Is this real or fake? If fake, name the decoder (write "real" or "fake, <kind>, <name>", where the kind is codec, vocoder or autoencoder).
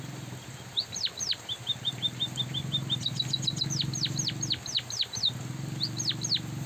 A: real